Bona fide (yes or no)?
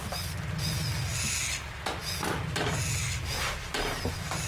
yes